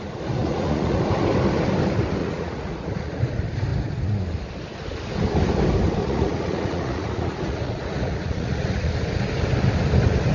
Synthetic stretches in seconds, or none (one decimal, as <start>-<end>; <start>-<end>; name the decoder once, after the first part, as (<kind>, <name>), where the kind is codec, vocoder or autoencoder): 0.4-1.0 (vocoder, Vocos); 2.2-3.3; 6.0-8.9